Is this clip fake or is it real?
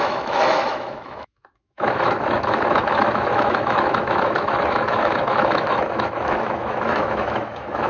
fake